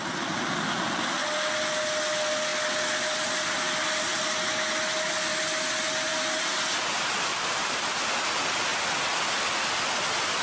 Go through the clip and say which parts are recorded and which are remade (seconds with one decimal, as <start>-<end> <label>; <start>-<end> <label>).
0.0-7.3 recorded; 7.3-8.0 remade; 8.0-10.4 recorded